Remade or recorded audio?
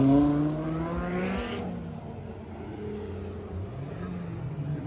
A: recorded